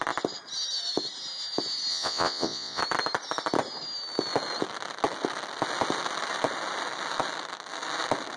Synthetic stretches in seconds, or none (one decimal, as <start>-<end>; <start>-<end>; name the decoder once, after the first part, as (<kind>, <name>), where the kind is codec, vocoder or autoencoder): 1.9-2.8 (vocoder, Vocos)